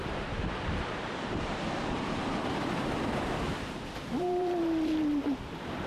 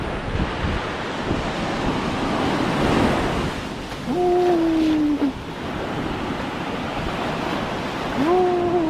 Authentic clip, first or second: second